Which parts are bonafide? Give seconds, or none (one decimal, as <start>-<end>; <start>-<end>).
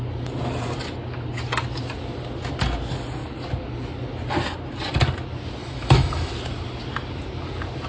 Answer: 0.0-5.6; 6.3-7.9